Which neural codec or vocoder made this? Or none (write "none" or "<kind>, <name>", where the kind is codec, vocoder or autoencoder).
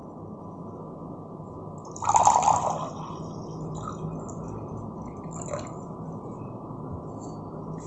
none